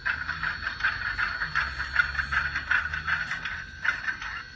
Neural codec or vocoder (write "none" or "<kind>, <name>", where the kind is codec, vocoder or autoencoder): none